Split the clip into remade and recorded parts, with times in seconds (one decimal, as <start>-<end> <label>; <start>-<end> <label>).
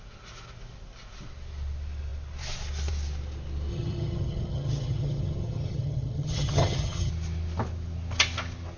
0.0-3.7 recorded; 3.7-7.1 remade; 7.1-8.8 recorded